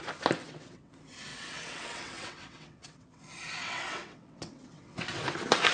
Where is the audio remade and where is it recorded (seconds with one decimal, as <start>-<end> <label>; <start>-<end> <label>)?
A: 0.0-0.4 recorded; 0.4-0.9 remade; 0.9-1.3 recorded; 1.3-3.2 remade; 3.2-3.6 recorded; 3.6-5.2 remade; 5.2-5.7 recorded